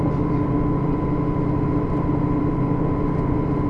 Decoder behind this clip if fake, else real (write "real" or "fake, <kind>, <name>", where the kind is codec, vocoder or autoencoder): real